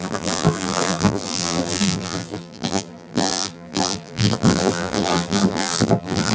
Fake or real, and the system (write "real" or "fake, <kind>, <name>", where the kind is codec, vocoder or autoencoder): fake, vocoder, BigVGAN v2